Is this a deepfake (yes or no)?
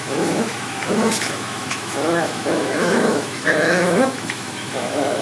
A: yes